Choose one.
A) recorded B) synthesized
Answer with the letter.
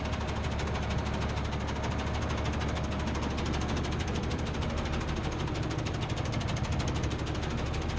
A